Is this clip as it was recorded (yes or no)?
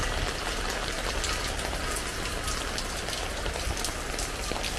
yes